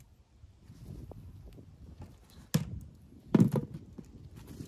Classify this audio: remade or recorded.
recorded